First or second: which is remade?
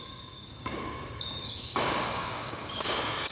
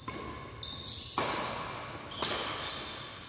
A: first